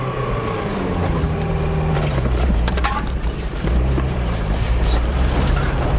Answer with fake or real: fake